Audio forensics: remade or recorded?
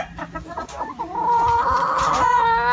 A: recorded